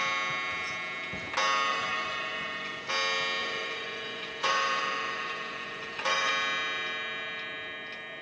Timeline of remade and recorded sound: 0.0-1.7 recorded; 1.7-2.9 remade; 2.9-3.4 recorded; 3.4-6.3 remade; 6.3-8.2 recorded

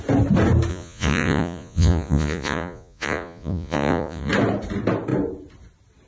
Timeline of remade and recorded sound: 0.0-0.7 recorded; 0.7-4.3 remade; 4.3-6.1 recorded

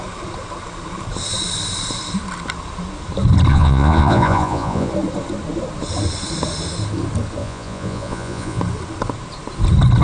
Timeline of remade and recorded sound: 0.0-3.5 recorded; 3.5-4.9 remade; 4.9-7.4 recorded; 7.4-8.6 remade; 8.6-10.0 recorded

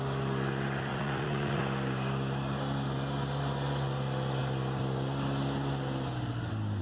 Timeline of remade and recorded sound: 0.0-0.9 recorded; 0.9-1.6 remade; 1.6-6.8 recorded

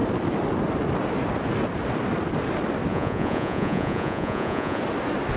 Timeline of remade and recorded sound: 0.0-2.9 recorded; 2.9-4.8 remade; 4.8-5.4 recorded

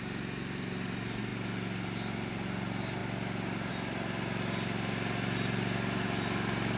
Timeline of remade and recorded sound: 0.0-6.8 recorded